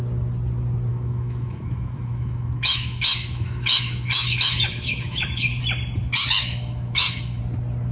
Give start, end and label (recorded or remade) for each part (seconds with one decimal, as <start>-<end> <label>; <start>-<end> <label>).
0.0-0.9 recorded; 0.9-5.6 remade; 5.6-6.4 recorded; 6.4-7.4 remade; 7.4-7.9 recorded